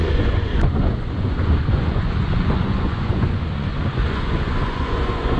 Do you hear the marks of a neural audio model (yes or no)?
yes